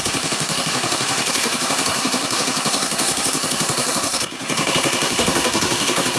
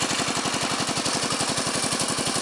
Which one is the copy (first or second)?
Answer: first